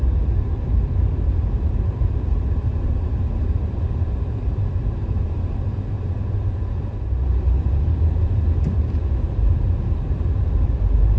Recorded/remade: remade